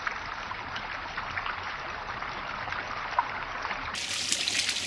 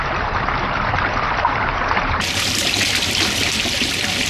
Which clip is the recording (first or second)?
first